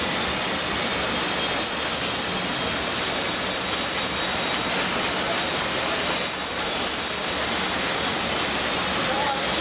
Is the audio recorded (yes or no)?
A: yes